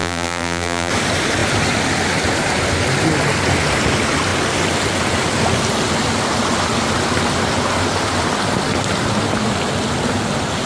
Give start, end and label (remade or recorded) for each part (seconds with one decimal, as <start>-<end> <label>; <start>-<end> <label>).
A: 0.0-0.9 remade; 0.9-10.7 recorded